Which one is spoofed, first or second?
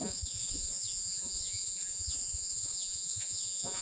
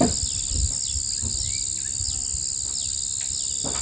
first